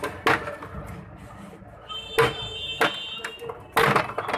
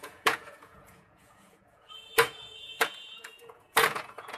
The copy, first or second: second